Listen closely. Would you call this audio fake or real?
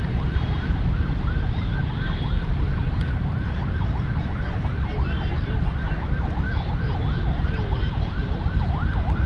fake